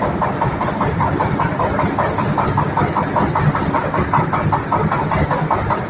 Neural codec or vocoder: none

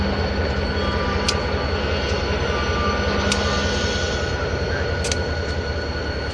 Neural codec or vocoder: none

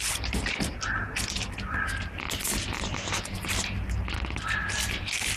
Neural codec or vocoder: none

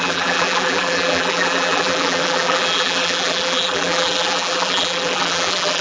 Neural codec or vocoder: vocoder, BigVGAN v2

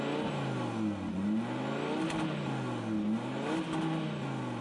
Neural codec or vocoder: none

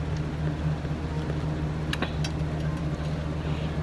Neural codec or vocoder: none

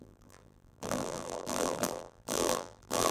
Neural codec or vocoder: vocoder, BigVGAN v2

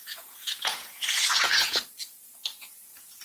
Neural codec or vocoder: vocoder, Vocos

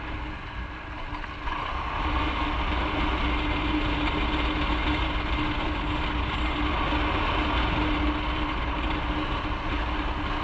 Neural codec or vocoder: none